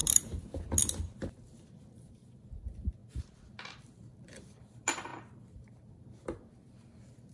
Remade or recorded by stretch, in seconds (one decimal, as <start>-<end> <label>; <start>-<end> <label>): 0.0-0.8 recorded; 0.8-3.0 remade; 3.0-3.8 recorded; 3.8-7.3 remade